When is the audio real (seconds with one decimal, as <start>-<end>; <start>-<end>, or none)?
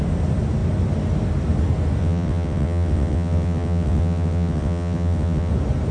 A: 0.0-2.0; 5.5-5.9